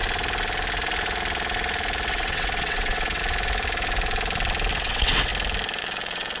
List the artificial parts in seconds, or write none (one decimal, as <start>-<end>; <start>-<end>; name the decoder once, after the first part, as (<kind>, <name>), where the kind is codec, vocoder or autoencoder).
2.1-3.2 (vocoder, WaveNeXt); 4.7-5.3; 5.8-6.4